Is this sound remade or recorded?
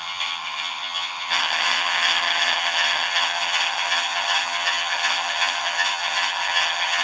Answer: remade